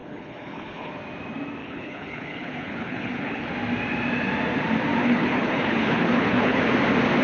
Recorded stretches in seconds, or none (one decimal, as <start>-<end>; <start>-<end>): 0.9-1.6; 3.5-5.0; 6.6-7.2